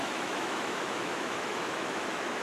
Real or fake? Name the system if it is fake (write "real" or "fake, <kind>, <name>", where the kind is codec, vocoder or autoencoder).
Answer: fake, autoencoder, DAC-VAE